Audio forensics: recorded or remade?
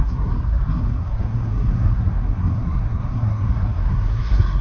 remade